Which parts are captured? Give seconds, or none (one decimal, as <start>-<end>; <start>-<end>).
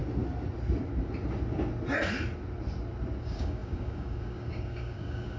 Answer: 0.0-3.2